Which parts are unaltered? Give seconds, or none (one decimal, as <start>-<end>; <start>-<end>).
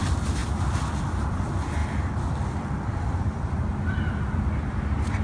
0.0-0.4; 1.0-5.2